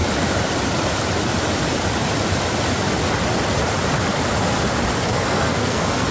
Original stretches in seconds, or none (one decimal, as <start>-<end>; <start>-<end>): 0.0-5.1